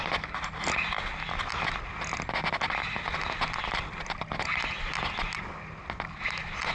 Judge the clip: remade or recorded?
recorded